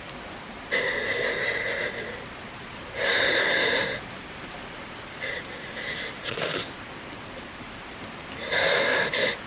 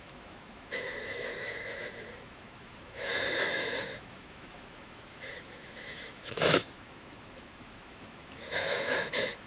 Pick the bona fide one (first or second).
first